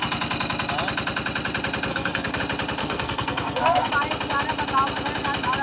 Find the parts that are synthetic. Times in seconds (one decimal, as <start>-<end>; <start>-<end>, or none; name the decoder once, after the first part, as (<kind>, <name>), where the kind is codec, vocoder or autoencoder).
1.9-2.4 (codec, SNAC); 2.8-3.9